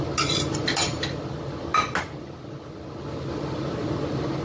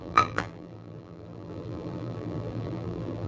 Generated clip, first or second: second